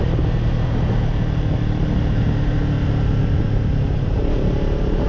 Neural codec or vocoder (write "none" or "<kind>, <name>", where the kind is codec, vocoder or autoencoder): none